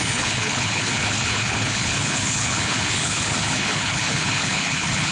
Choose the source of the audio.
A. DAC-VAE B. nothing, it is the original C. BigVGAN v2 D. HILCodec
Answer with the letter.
D